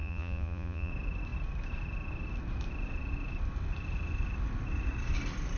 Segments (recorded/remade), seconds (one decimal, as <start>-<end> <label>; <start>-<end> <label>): 0.0-0.9 remade; 0.9-5.6 recorded